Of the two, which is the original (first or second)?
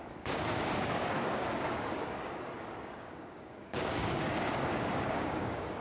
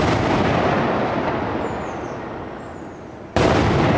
second